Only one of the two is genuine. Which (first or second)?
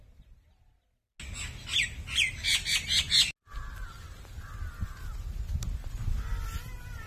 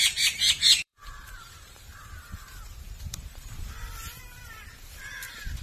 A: first